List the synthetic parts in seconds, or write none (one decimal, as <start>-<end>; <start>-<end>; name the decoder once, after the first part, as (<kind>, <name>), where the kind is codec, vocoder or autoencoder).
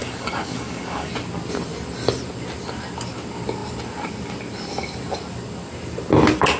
0.0-1.1 (codec, DAC)